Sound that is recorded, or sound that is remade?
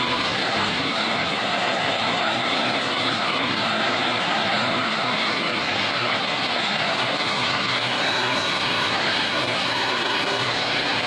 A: remade